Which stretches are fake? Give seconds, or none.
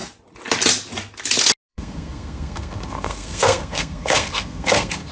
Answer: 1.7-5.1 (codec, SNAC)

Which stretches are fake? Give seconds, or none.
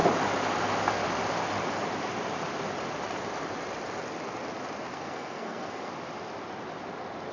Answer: 4.9-5.9 (codec, SNAC)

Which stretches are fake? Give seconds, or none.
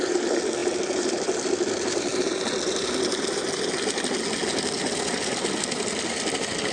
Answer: none